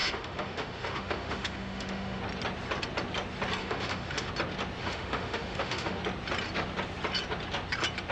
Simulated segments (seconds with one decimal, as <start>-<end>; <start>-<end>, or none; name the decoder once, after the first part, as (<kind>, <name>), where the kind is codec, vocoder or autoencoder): 0.0-2.2 (autoencoder, DAC-VAE); 3.6-4.3; 4.8-6.0